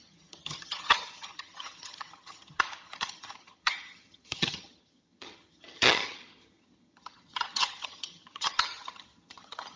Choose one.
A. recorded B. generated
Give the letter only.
B